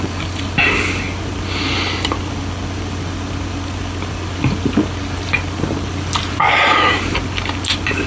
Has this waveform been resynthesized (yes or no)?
no